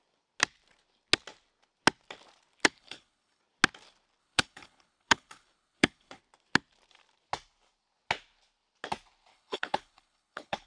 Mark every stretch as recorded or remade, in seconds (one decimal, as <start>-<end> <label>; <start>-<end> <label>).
0.0-2.6 recorded; 2.6-3.4 remade; 3.4-4.2 recorded; 4.2-6.2 remade; 6.2-9.3 recorded; 9.3-10.7 remade